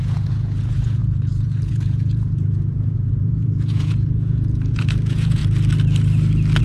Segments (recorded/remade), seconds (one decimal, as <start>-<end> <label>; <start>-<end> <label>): 0.0-5.4 remade; 5.4-6.6 recorded